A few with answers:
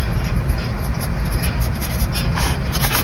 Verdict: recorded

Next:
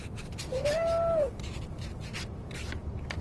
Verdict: remade